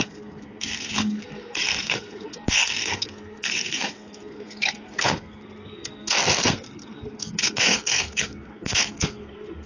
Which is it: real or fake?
fake